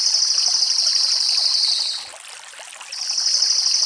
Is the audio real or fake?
real